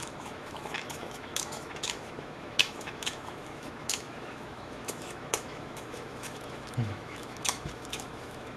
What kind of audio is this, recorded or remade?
remade